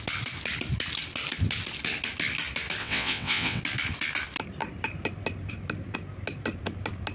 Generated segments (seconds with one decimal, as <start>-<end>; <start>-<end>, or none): 2.8-3.6